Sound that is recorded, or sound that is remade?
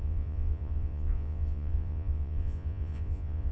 remade